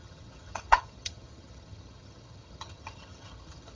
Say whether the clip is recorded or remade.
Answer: remade